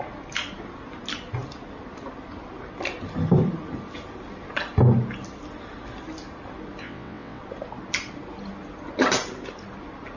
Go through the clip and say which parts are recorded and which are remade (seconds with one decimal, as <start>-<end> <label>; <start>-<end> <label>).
0.0-6.8 recorded; 6.8-7.4 remade; 7.4-10.2 recorded